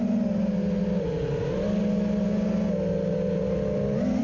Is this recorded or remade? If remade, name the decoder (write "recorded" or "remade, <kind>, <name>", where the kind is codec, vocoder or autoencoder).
recorded